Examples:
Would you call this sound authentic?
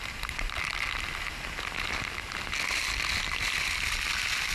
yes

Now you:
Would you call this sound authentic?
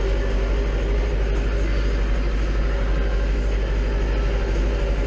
yes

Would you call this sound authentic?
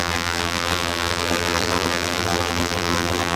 no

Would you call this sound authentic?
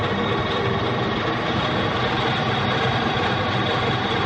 yes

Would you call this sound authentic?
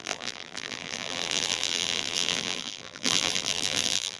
no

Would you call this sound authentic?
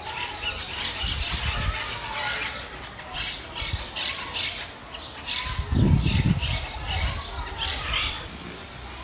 yes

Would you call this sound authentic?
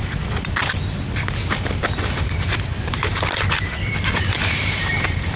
no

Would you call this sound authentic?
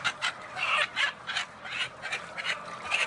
no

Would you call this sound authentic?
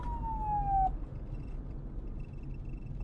yes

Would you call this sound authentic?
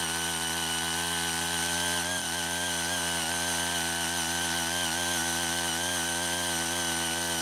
yes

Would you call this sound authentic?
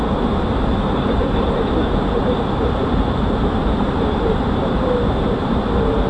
no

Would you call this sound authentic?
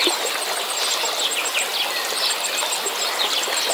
yes